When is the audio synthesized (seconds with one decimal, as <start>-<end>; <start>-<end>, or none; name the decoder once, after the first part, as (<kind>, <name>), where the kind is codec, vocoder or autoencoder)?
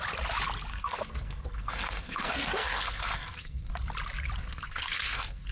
0.7-3.7 (codec, SNAC); 4.4-5.5